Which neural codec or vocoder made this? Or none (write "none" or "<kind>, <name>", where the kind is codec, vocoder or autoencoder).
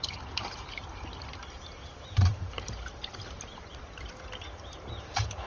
vocoder, BigVGAN v2